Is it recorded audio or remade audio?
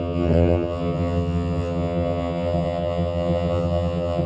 remade